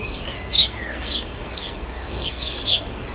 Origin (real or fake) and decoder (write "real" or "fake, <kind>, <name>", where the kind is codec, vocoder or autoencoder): fake, codec, SNAC